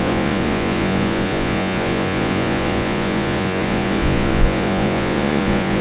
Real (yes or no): no